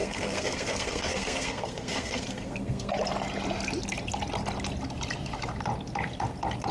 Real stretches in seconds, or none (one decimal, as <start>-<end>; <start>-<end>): 2.9-6.7